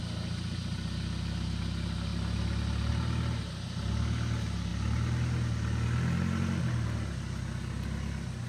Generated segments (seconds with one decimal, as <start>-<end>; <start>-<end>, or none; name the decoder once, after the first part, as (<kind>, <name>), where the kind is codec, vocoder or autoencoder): none